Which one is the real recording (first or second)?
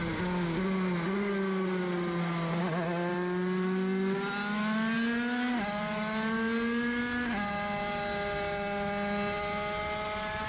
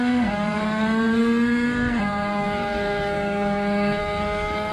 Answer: first